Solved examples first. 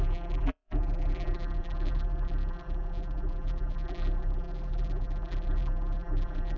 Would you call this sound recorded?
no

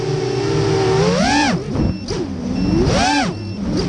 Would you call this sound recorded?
yes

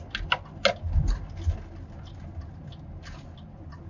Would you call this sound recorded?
yes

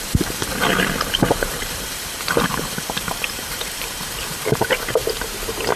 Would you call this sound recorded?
no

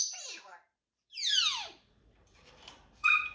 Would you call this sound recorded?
no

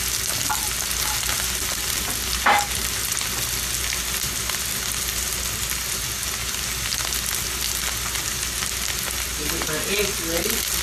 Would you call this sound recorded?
yes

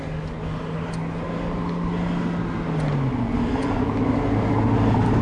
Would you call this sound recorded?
yes